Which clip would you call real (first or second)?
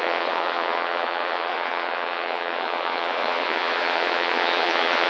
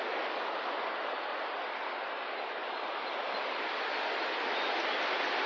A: second